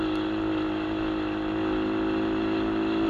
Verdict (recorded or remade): recorded